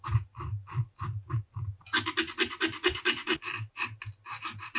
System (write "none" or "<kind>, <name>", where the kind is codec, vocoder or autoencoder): none